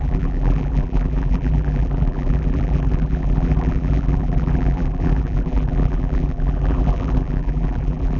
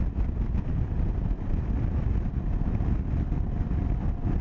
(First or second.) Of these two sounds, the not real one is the first